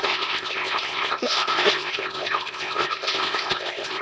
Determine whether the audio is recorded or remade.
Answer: remade